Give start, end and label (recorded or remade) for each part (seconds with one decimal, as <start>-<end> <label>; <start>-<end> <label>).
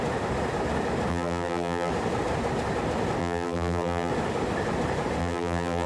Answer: 0.0-1.1 recorded; 1.1-1.9 remade; 1.9-3.2 recorded; 3.2-4.1 remade; 4.1-5.2 recorded; 5.2-5.9 remade